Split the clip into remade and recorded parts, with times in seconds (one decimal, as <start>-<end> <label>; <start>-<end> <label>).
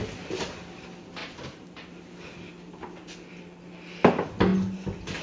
0.0-5.2 recorded